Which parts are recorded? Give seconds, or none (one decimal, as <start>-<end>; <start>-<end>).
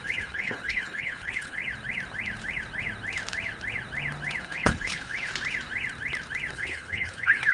1.6-4.4; 5.3-6.5